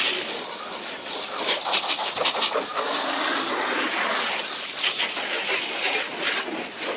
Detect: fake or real real